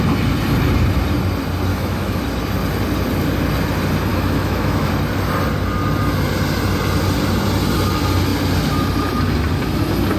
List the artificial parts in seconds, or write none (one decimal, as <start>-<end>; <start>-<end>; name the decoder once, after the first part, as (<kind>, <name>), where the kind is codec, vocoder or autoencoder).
1.7-2.2 (autoencoder, DAC-VAE); 4.1-4.9